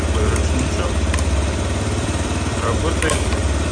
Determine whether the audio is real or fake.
fake